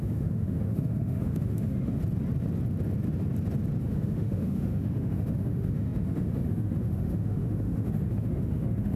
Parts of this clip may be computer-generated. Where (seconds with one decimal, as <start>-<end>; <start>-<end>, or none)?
0.0-2.0; 3.8-9.0